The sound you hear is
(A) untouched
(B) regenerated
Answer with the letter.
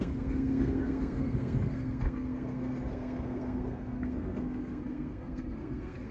B